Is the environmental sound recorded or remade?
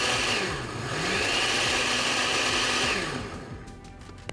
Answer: recorded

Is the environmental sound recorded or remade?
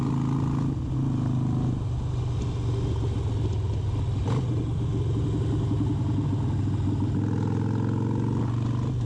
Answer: recorded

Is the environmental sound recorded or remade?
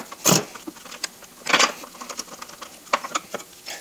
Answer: recorded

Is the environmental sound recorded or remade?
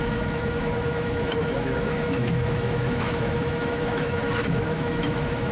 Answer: remade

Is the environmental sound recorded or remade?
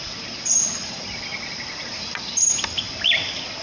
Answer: recorded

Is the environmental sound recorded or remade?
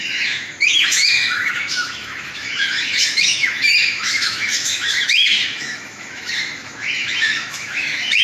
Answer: remade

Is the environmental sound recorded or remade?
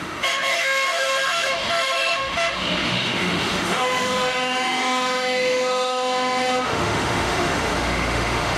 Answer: remade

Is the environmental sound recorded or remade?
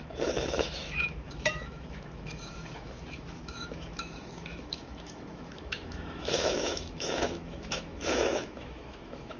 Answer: remade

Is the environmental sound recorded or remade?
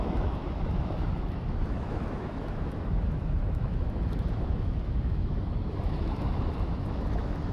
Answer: remade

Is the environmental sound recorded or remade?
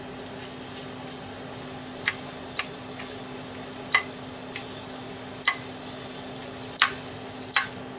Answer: recorded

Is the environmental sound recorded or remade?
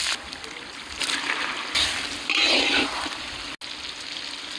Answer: recorded